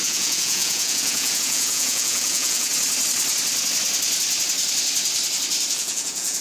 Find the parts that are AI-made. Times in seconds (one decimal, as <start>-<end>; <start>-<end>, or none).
0.0-2.7; 5.7-6.4